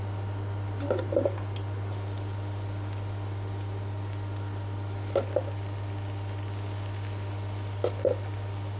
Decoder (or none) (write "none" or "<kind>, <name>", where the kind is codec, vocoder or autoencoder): none